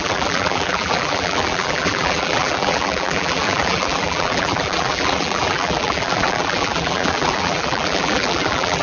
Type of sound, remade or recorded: remade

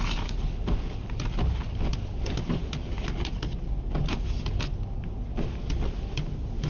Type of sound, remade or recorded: recorded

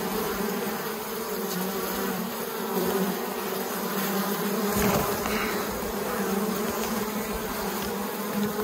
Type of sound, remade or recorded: remade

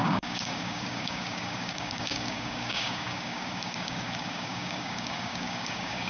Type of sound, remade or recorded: remade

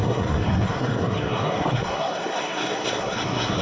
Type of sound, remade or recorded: remade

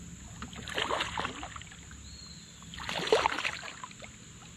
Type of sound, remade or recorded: recorded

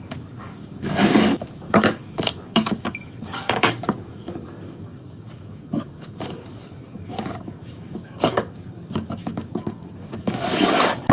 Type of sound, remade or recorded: remade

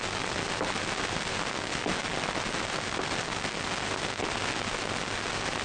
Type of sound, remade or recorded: recorded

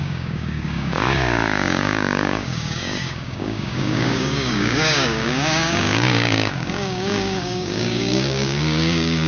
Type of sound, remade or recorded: remade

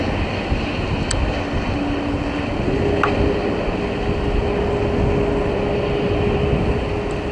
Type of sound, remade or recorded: recorded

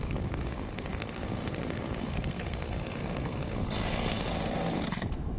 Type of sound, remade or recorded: remade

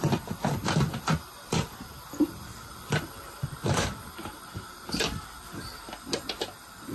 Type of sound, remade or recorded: remade